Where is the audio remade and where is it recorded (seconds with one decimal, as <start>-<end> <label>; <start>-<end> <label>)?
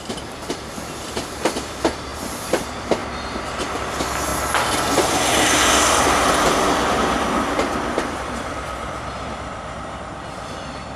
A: 0.0-3.0 remade; 3.0-3.5 recorded; 3.5-11.0 remade